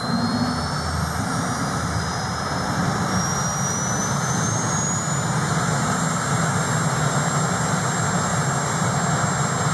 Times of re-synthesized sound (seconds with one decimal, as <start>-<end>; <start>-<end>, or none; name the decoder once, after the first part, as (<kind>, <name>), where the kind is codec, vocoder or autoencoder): 8.3-8.9 (vocoder, BigVGAN v2)